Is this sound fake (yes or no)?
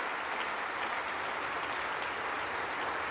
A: no